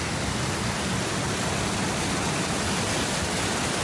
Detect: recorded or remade recorded